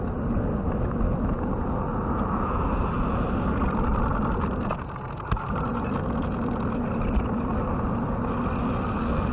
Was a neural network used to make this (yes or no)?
no